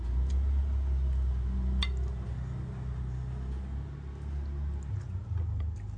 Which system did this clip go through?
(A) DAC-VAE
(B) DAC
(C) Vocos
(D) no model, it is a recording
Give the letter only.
D